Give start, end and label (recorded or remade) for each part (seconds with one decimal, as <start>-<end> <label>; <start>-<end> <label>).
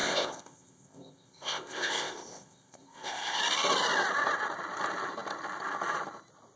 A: 0.0-3.4 remade; 3.4-6.6 recorded